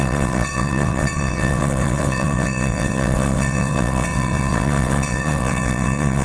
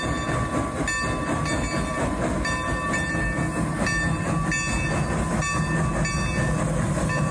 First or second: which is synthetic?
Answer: first